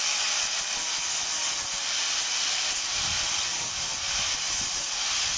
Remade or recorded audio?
recorded